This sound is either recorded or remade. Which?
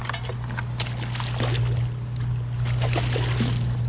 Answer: recorded